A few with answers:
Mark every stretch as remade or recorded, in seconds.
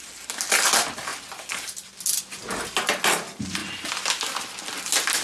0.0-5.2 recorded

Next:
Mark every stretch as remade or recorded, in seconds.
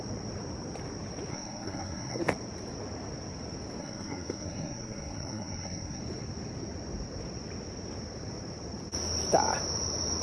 0.0-1.3 recorded; 1.3-2.2 remade; 2.2-3.8 recorded; 3.8-6.0 remade; 6.0-10.2 recorded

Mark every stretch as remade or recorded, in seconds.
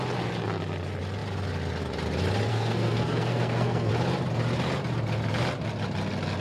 0.0-2.5 recorded; 2.5-3.9 remade; 3.9-6.4 recorded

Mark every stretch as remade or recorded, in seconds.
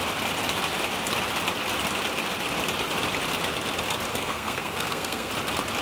0.0-4.1 recorded; 4.1-5.3 remade; 5.3-5.8 recorded